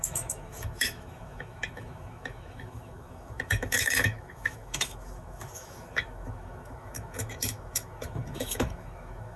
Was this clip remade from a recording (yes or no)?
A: yes